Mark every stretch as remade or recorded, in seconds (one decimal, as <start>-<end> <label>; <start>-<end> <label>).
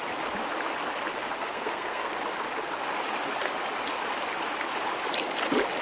0.0-1.2 recorded; 1.2-2.1 remade; 2.1-5.8 recorded